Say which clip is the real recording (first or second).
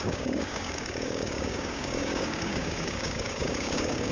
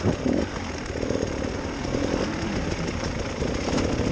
second